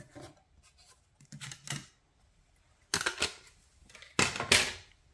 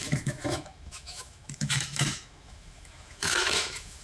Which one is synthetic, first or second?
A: second